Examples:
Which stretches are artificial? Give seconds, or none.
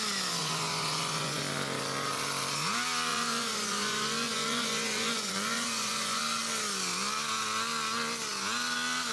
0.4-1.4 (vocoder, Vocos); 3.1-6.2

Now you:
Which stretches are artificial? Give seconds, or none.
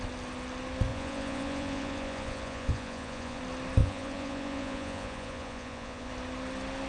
0.9-3.4 (vocoder, Vocos); 3.8-6.1